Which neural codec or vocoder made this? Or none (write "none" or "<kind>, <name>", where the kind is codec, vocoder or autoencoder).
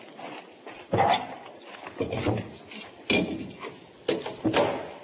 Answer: none